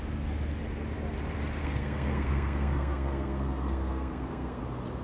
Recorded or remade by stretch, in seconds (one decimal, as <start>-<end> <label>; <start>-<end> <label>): 0.0-1.6 recorded; 1.6-4.6 remade; 4.6-5.0 recorded

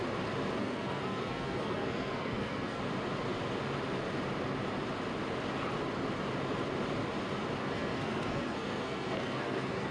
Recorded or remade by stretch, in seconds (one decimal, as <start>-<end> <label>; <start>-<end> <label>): 0.0-0.6 recorded; 0.6-2.8 remade; 2.8-7.6 recorded; 7.6-9.9 remade